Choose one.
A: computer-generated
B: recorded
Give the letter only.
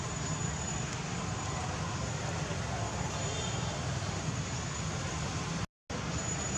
B